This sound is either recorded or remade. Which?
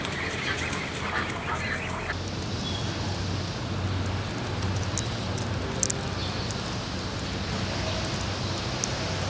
recorded